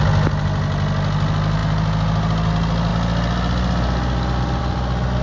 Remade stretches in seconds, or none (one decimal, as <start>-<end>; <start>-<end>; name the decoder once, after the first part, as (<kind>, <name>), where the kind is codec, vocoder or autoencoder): none